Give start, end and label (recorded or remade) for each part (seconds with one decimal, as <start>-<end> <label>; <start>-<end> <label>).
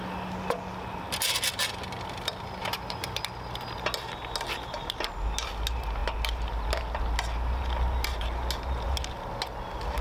0.0-2.6 recorded; 2.6-3.2 remade; 3.2-10.0 recorded